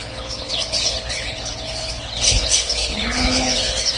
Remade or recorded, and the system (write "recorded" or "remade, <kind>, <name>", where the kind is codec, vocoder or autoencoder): remade, codec, HILCodec